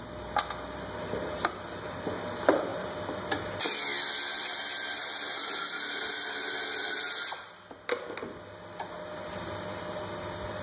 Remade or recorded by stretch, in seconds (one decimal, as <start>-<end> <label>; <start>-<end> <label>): 0.0-10.6 recorded